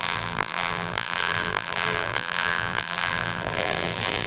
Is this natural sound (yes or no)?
no